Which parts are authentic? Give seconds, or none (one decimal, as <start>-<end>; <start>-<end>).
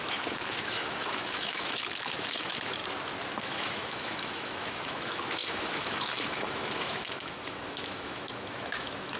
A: 2.8-3.4